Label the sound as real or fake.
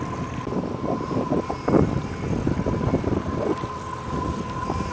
real